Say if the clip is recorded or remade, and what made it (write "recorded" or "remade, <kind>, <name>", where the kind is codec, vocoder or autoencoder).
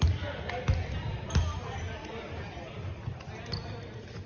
recorded